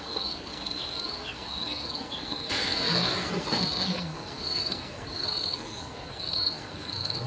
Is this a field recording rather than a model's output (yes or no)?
no